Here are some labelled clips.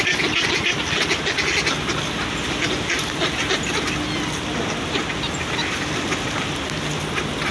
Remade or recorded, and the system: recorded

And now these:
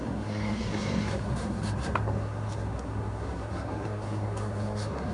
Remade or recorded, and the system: remade, codec, SNAC